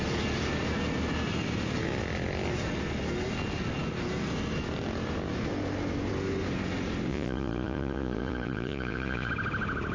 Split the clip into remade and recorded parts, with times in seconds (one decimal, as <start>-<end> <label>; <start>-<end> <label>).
0.0-7.1 recorded; 7.1-9.3 remade; 9.3-9.9 recorded